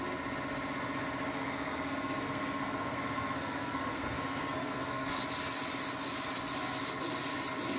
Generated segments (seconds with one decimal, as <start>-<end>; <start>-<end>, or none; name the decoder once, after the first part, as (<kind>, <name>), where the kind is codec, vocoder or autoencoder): 1.3-5.2 (codec, SNAC)